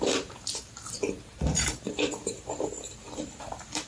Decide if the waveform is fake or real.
fake